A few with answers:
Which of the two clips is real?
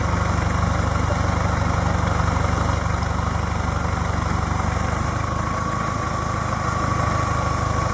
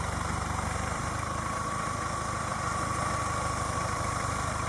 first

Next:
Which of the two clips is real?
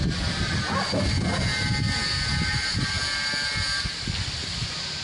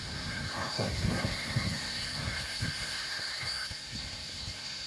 first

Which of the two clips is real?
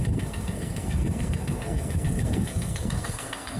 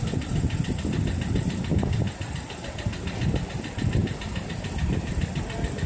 second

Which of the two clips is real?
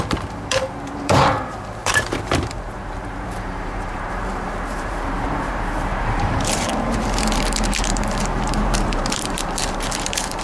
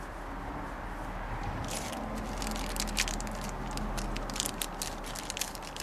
second